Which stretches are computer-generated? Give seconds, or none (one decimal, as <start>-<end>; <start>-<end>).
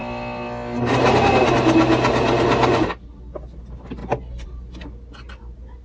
none